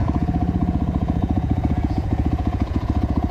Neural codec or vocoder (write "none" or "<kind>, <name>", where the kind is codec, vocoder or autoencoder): vocoder, Vocos